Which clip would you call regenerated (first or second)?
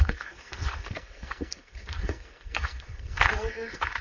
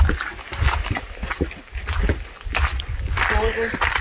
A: first